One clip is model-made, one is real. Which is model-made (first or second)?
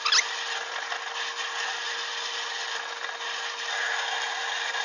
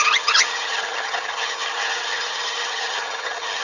second